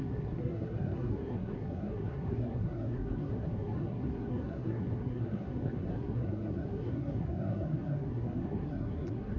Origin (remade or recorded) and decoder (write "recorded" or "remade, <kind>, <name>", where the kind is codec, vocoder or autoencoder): remade, codec, SNAC